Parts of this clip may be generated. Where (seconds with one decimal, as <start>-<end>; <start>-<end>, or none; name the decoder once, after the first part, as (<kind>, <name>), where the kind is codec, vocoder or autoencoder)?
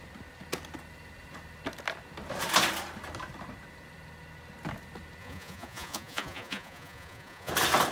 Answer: 5.2-7.5 (vocoder, Vocos)